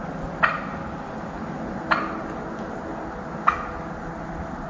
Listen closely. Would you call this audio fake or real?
real